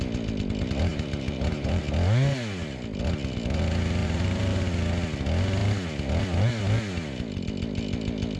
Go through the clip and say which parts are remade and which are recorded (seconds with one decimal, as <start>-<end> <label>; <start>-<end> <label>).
0.0-0.9 recorded; 0.9-1.8 remade; 1.8-4.0 recorded; 4.0-4.6 remade; 4.6-8.4 recorded